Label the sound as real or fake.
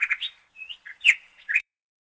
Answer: fake